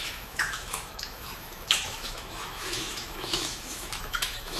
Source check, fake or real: fake